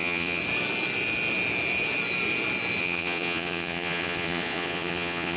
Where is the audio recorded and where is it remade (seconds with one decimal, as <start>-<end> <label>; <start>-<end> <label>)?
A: 0.0-0.4 remade; 0.4-2.8 recorded; 2.8-5.4 remade